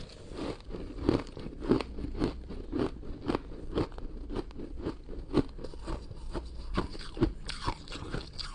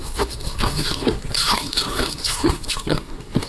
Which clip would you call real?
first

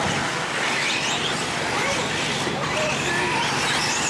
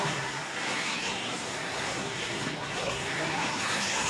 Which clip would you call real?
first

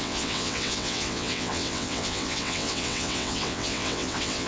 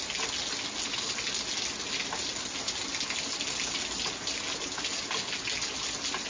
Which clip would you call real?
second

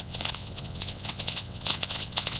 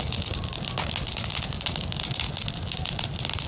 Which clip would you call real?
second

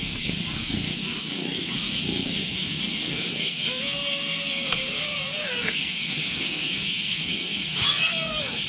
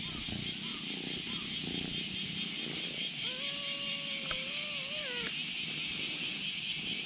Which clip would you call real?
second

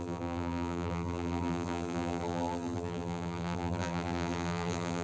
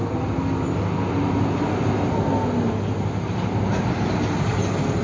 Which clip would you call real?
second